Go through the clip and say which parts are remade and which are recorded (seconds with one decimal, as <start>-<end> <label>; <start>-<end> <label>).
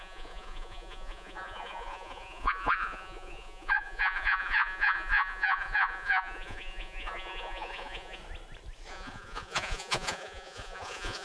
0.0-8.2 remade; 8.2-8.9 recorded; 8.9-11.2 remade